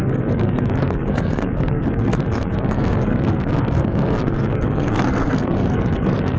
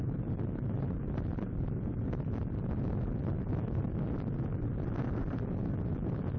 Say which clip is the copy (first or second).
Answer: first